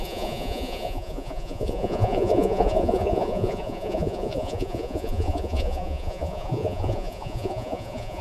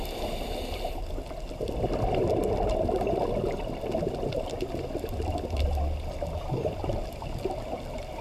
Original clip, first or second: second